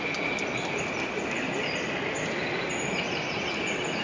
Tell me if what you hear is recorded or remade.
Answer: recorded